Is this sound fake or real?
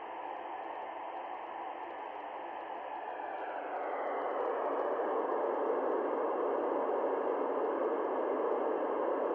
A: real